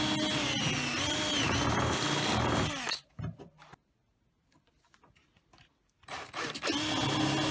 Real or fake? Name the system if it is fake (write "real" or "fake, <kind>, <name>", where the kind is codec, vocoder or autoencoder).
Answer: real